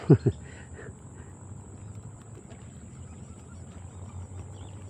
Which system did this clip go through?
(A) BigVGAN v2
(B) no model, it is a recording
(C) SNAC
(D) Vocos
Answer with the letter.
B